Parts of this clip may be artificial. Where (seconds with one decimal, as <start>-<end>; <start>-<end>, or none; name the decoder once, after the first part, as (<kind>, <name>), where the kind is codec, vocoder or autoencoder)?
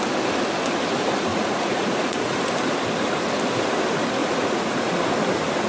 1.3-2.5 (vocoder, Vocos); 4.2-5.0